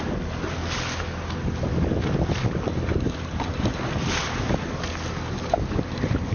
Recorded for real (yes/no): yes